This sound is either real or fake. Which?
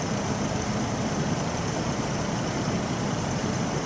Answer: fake